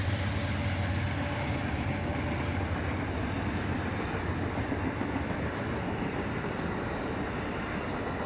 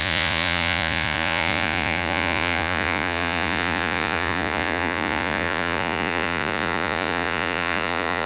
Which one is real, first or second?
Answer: first